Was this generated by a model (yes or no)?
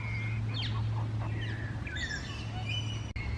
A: no